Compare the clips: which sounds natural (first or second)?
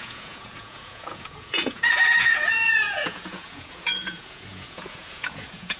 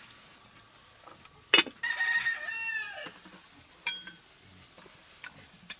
second